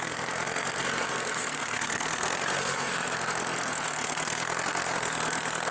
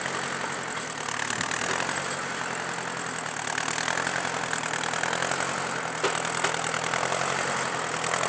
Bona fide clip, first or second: second